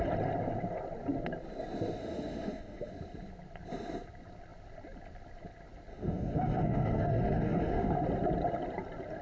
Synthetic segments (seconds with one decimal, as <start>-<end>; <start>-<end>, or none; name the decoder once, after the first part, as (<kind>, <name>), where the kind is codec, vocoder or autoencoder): 2.0-2.9 (autoencoder, DAC-VAE); 5.9-7.9